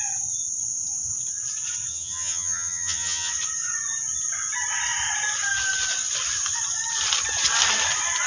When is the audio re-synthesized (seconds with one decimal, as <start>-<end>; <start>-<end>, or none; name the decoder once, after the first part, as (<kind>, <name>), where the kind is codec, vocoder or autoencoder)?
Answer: 1.9-3.3 (vocoder, HiFi-GAN)